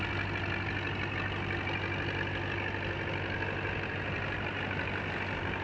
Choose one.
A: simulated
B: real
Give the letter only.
B